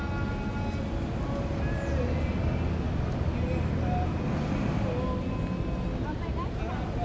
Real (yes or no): yes